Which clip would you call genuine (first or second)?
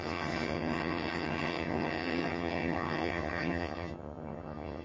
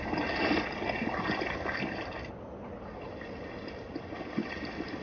second